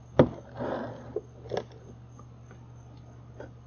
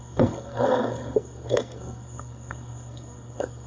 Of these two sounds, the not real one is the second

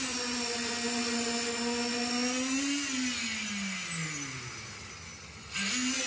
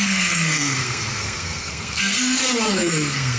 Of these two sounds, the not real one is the second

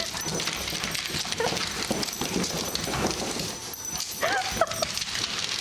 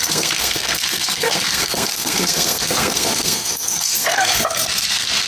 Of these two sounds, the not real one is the second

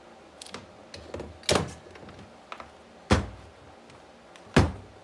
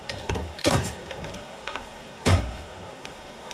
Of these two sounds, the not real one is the second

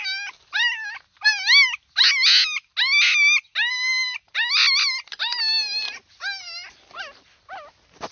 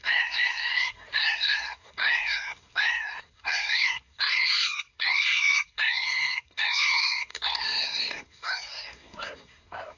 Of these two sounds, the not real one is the second